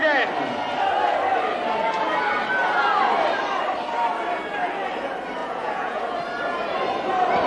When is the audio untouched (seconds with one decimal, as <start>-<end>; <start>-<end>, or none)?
0.0-5.4; 6.0-7.5